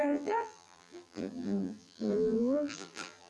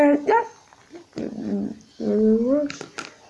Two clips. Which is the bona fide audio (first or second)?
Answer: second